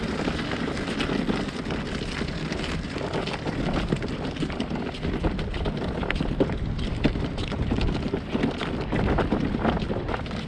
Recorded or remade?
recorded